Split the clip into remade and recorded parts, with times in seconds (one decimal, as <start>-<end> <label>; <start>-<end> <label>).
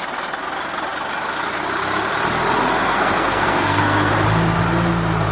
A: 0.0-2.8 recorded; 2.8-4.1 remade; 4.1-5.3 recorded